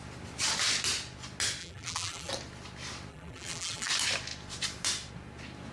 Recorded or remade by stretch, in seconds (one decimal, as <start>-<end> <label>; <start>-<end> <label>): 0.0-1.6 recorded; 1.6-2.3 remade; 2.3-3.1 recorded; 3.1-3.9 remade; 3.9-5.7 recorded